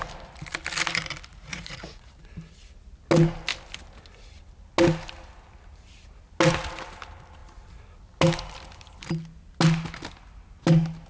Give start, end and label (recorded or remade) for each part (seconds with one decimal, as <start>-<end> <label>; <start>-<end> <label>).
0.0-1.3 recorded; 1.3-2.1 remade; 2.1-11.1 recorded